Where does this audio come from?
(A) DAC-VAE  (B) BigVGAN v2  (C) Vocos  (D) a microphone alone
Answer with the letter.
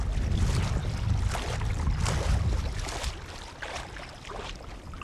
D